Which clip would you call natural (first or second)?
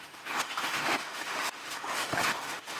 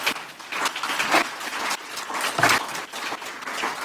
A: second